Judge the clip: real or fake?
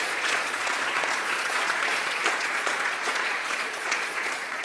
fake